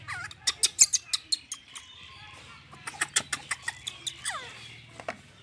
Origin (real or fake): real